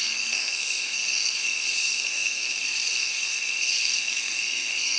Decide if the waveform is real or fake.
fake